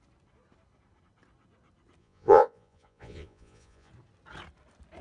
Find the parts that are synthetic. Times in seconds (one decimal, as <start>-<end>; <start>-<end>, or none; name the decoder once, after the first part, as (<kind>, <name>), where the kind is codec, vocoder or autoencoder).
2.0-3.9 (vocoder, Vocos)